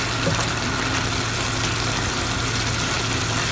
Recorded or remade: recorded